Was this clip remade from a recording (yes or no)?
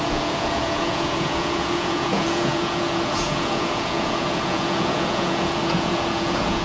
yes